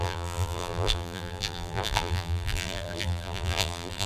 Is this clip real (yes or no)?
no